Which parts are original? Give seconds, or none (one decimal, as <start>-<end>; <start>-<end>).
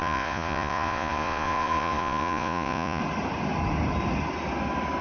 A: 3.0-5.0